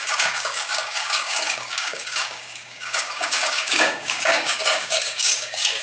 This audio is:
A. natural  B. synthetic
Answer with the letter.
B